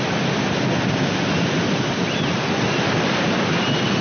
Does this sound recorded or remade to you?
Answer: recorded